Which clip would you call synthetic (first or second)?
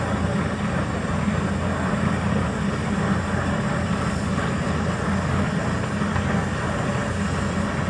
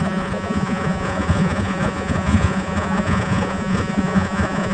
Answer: second